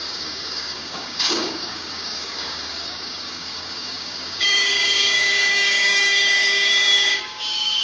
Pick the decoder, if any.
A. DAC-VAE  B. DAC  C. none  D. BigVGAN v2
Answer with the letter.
B